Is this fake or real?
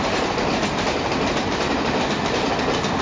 real